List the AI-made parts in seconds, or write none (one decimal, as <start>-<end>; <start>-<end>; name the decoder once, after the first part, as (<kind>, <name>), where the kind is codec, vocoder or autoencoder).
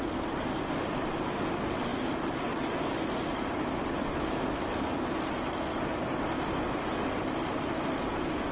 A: none